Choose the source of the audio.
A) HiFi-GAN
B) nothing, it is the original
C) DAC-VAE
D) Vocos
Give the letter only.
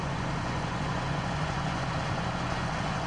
D